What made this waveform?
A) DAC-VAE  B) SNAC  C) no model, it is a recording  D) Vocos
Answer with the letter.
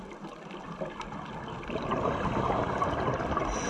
C